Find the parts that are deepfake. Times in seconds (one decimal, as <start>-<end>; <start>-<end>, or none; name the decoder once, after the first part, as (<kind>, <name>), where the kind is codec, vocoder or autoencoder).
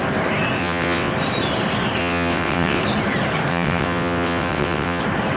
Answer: 0.6-1.1 (vocoder, WaveNeXt); 2.0-2.8; 3.5-5.0